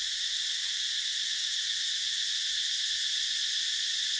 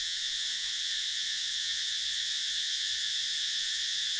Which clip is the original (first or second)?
first